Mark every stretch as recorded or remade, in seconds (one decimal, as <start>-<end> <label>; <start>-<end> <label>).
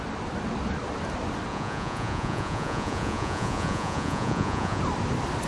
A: 0.0-1.5 recorded; 1.5-4.8 remade; 4.8-5.5 recorded